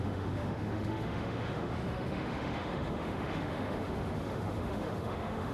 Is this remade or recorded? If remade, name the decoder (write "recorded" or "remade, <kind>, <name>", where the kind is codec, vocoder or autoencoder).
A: remade, autoencoder, DAC-VAE